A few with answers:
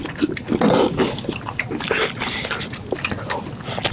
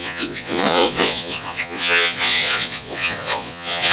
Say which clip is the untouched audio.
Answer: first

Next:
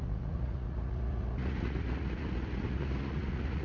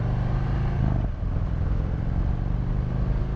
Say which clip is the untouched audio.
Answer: second